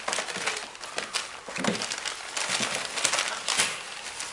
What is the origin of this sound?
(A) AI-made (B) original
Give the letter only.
B